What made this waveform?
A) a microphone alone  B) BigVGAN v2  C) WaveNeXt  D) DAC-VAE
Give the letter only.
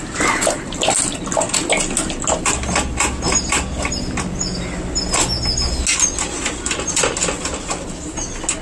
A